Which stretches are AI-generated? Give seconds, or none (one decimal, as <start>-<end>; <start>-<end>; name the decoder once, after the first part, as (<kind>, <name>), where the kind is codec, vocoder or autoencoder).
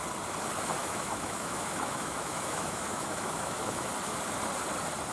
0.8-3.9 (autoencoder, DAC-VAE)